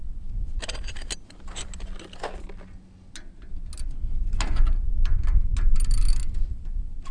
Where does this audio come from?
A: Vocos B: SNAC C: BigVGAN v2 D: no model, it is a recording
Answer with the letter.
D